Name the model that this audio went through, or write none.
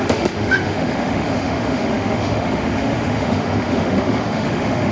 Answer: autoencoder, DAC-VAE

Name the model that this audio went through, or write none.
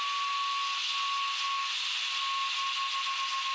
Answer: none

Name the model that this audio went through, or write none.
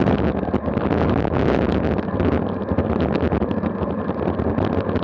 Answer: none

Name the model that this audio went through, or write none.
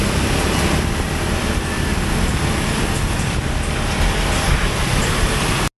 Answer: none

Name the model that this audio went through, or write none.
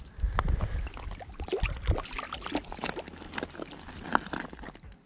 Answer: none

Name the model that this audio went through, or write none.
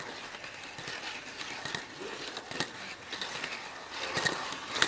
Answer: none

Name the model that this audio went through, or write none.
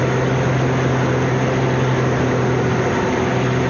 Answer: none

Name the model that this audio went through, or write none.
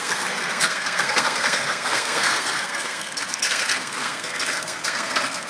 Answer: codec, SNAC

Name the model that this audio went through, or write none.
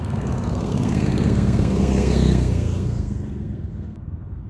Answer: codec, SNAC